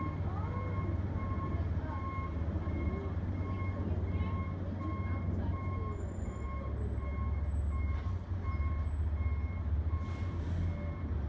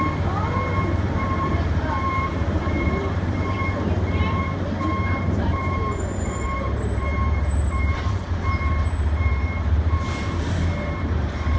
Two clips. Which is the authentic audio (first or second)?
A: first